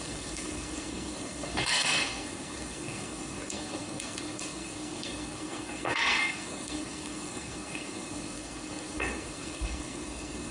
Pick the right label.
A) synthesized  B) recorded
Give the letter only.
A